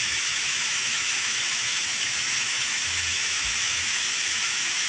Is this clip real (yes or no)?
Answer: no